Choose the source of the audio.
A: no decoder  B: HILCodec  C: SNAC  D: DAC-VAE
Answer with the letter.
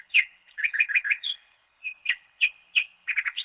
B